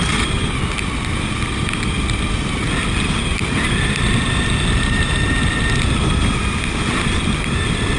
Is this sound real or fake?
real